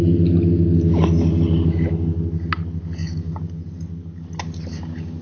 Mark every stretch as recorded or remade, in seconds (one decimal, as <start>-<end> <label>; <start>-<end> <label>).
0.0-3.0 recorded; 3.0-3.7 remade; 3.7-5.2 recorded